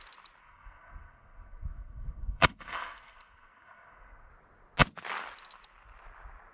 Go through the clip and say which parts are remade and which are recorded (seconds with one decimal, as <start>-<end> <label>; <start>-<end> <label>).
0.0-0.4 recorded; 0.4-4.3 remade; 4.3-6.5 recorded